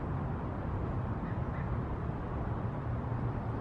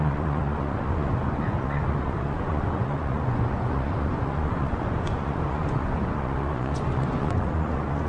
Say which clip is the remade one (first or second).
second